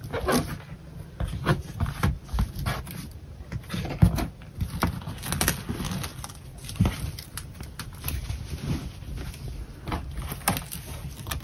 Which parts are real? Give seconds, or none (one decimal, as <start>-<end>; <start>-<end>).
0.0-1.5; 2.8-6.1; 8.1-11.4